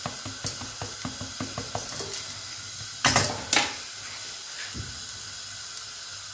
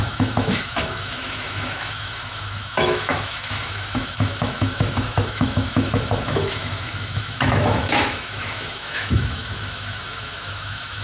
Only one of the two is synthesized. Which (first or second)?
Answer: second